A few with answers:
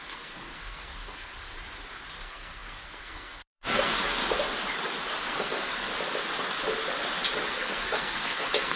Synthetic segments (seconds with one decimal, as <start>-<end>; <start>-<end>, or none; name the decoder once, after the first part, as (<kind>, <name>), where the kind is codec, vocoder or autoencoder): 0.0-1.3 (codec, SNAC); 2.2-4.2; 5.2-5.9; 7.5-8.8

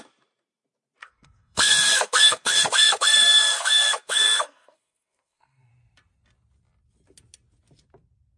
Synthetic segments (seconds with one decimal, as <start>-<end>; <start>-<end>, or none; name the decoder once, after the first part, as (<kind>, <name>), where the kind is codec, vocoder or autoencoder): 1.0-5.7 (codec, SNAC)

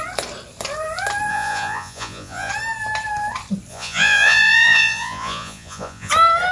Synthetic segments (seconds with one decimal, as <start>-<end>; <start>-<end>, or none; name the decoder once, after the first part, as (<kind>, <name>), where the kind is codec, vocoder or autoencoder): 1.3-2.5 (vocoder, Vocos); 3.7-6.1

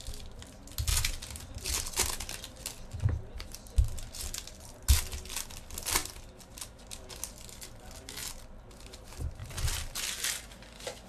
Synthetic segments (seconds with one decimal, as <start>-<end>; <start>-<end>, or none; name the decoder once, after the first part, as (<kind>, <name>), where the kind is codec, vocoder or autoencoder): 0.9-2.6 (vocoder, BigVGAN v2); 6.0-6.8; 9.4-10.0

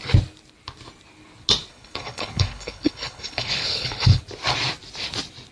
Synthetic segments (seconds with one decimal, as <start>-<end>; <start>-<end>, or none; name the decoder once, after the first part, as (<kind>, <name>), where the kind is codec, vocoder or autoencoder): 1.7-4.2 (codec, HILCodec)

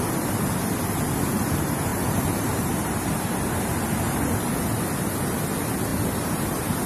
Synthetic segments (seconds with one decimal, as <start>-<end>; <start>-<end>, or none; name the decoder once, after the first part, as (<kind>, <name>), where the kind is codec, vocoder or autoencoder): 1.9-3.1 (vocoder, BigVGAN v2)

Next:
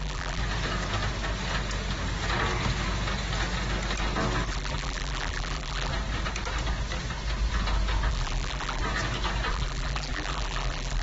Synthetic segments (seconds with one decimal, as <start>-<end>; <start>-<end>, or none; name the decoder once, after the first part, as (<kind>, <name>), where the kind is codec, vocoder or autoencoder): 0.0-0.4 (vocoder, BigVGAN v2); 4.5-5.9; 8.1-8.8; 9.5-11.0